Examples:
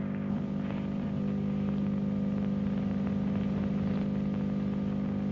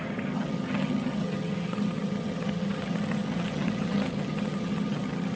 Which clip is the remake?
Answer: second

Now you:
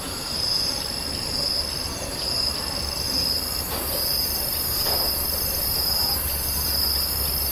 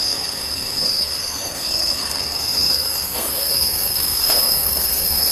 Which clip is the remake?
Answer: second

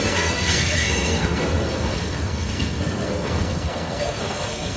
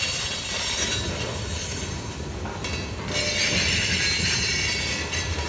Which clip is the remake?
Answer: first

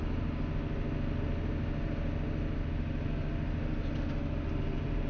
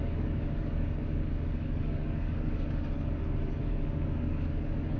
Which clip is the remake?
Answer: second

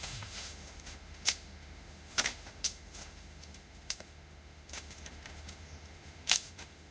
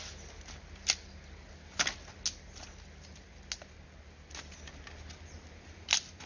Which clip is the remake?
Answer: first